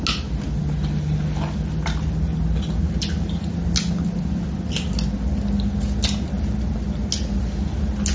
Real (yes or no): yes